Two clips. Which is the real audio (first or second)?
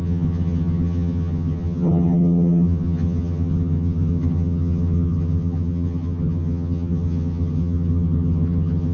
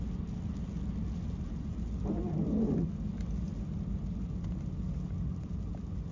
second